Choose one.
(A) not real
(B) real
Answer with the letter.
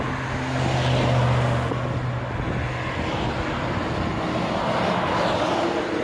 B